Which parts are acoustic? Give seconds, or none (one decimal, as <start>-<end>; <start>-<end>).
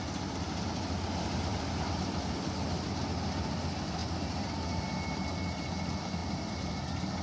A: 0.0-1.5; 3.0-4.0; 4.8-6.2; 6.7-7.2